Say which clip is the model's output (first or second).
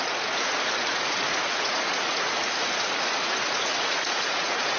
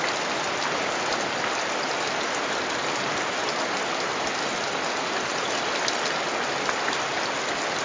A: first